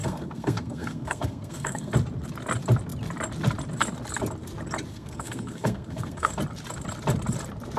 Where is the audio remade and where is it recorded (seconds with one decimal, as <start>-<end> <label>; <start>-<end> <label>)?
0.0-1.9 remade; 1.9-4.9 recorded; 4.9-6.3 remade; 6.3-7.8 recorded